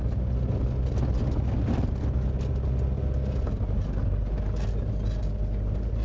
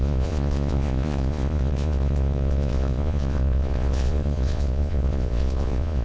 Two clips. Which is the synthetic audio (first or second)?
second